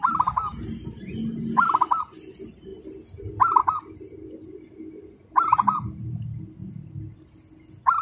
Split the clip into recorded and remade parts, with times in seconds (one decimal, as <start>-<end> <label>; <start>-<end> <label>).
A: 0.0-8.0 recorded